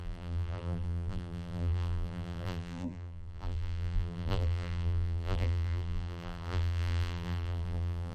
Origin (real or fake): fake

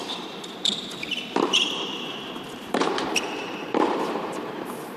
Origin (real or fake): fake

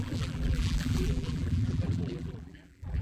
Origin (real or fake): fake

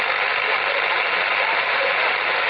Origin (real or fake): real